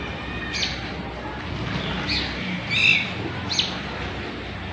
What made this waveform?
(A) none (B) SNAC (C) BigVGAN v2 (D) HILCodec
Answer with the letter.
A